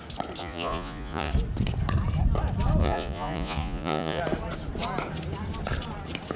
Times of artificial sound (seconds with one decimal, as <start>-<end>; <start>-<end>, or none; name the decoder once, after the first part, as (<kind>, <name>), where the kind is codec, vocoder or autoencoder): 0.4-1.3 (vocoder, Vocos); 2.8-4.2